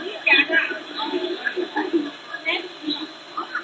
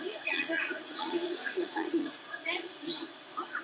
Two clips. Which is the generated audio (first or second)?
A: second